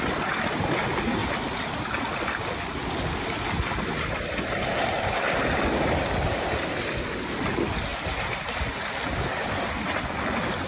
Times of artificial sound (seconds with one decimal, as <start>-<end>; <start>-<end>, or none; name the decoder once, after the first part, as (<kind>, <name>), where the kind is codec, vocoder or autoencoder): none